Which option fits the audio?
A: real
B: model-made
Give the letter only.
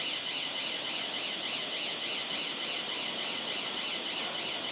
A